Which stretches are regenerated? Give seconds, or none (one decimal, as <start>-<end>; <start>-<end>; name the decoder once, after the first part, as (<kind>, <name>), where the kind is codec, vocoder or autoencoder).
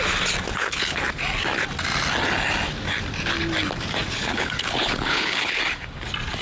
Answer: 0.5-1.0 (codec, HILCodec); 4.2-5.6